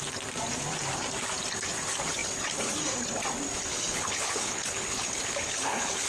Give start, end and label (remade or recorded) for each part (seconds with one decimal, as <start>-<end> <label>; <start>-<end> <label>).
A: 0.0-3.7 recorded; 3.7-6.1 remade